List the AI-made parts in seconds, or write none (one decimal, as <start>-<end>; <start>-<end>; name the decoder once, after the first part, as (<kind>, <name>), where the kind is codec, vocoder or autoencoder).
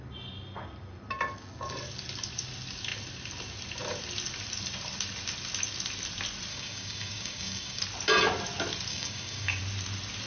6.5-7.8 (codec, DAC); 8.9-9.6